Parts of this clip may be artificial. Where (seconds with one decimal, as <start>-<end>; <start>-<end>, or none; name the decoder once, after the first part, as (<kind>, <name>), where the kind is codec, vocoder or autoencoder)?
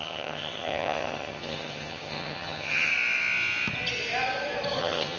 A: 0.0-2.9 (vocoder, HiFi-GAN); 4.8-5.2